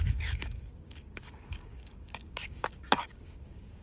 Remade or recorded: remade